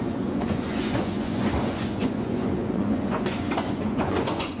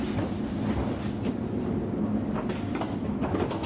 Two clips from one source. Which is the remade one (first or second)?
first